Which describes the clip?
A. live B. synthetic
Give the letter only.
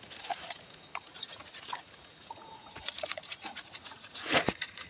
B